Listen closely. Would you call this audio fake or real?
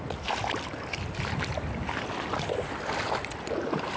real